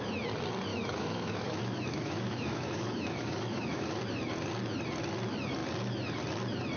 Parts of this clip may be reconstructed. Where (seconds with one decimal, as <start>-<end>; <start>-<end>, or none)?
0.7-4.0